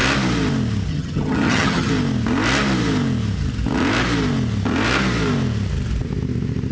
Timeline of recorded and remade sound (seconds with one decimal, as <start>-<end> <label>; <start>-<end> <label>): 0.0-0.9 recorded; 0.9-1.9 remade; 1.9-6.7 recorded